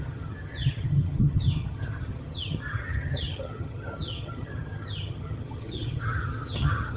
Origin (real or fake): fake